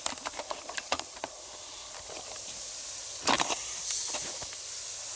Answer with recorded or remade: recorded